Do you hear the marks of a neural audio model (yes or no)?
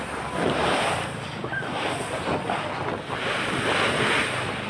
no